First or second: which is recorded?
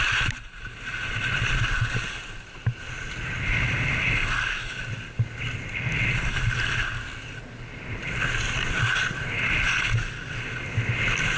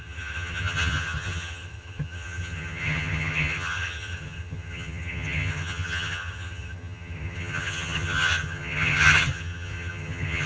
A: first